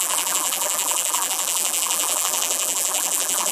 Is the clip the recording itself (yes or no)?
no